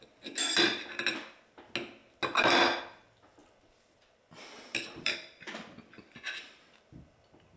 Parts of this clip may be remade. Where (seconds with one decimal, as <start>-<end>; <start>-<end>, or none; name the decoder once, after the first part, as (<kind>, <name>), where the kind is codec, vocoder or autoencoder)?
3.4-5.4 (vocoder, BigVGAN v2)